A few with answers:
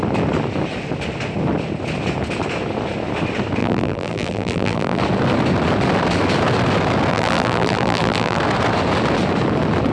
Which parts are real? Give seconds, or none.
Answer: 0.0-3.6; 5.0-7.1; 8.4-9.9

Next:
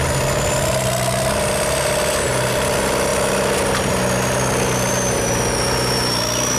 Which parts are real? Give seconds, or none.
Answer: 0.0-6.6

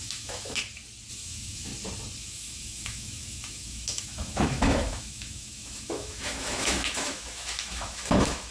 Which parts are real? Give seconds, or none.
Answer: 0.6-1.1; 1.7-2.2